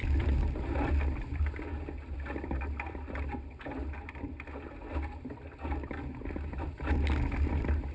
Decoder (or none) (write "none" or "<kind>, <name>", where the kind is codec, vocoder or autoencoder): none